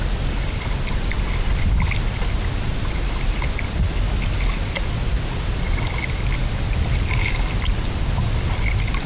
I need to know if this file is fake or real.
real